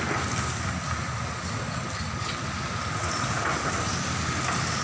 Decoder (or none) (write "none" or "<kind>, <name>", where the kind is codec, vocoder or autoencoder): none